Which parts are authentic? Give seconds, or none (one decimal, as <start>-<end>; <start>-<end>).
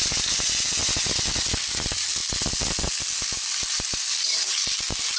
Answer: 0.0-5.2